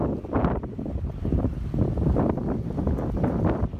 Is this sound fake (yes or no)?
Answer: no